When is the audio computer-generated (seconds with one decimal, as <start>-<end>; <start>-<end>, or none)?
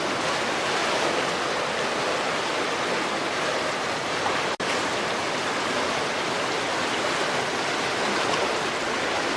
none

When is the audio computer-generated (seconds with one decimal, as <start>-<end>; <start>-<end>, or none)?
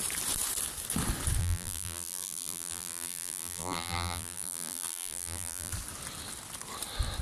1.4-5.7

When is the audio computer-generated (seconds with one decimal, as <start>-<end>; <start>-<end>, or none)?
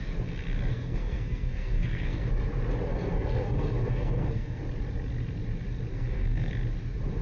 0.7-2.3; 2.9-4.6; 5.9-6.5